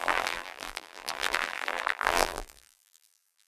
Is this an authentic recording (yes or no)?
no